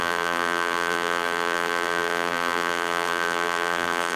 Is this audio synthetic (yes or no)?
yes